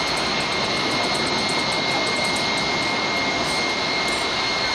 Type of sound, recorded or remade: recorded